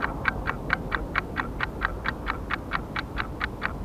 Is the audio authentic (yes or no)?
yes